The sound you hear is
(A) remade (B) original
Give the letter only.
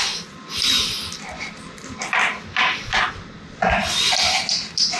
B